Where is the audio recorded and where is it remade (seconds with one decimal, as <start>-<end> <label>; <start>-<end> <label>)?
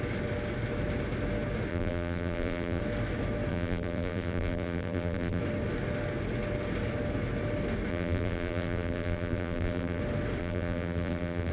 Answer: 0.0-1.7 recorded; 1.7-2.8 remade; 2.8-3.5 recorded; 3.5-5.4 remade; 5.4-7.9 recorded; 7.9-10.0 remade; 10.0-10.4 recorded; 10.4-11.5 remade